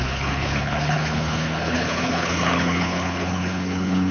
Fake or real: fake